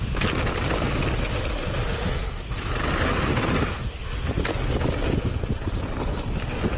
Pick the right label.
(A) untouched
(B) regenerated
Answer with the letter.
A